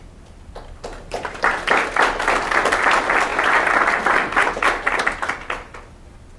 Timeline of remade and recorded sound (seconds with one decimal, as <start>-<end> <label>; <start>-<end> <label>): 0.0-0.9 recorded; 0.9-1.7 remade; 1.7-3.3 recorded; 3.3-5.0 remade; 5.0-6.4 recorded